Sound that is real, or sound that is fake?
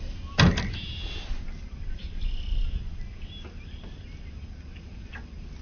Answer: real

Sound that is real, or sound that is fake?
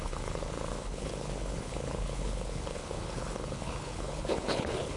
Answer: fake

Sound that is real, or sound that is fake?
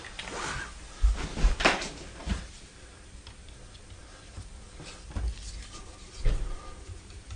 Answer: real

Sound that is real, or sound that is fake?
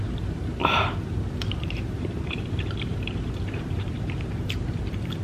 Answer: fake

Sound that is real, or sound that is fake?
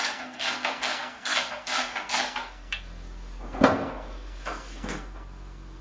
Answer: fake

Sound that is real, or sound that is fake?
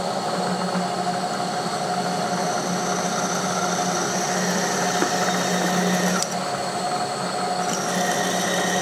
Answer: real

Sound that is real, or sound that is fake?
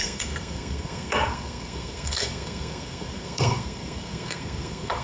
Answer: fake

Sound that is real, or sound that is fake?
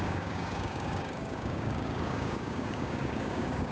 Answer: fake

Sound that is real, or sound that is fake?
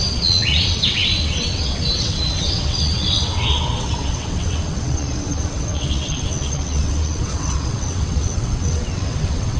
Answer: fake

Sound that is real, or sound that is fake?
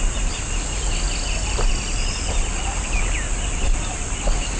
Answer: real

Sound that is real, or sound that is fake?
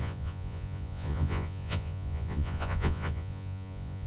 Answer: fake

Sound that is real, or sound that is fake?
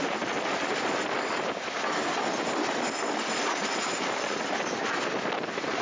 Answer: fake